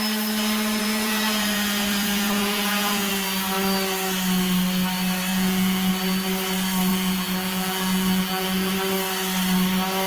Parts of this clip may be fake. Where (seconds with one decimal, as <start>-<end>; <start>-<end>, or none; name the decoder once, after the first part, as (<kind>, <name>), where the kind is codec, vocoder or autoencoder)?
0.8-3.1 (vocoder, Vocos); 5.3-5.9; 6.9-8.7